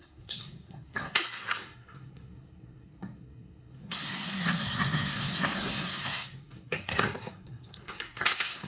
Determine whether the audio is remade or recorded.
remade